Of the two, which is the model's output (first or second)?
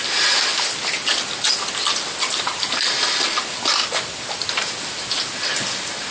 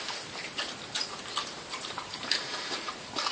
second